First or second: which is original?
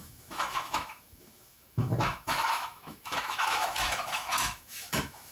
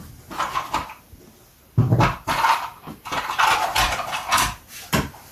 second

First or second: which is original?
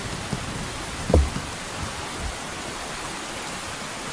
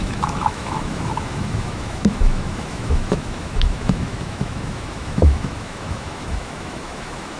first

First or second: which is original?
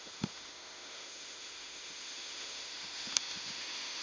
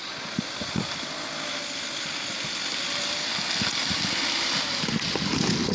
second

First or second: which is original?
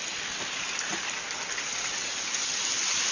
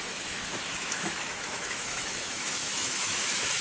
first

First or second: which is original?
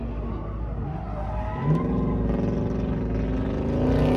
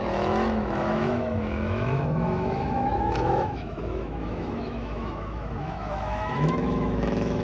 first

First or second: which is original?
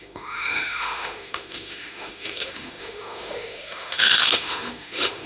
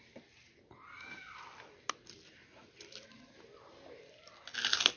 second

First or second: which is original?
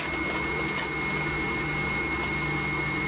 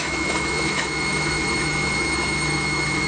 first